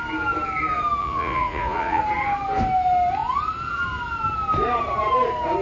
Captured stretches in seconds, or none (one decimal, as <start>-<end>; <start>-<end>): 0.0-1.0; 2.0-5.6